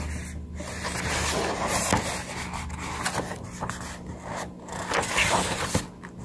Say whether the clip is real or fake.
real